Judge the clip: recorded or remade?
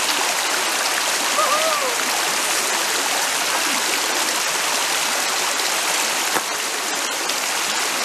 recorded